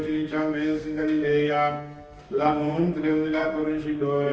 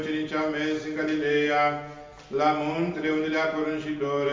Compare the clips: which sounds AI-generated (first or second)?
first